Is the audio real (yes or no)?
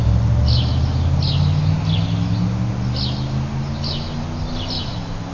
yes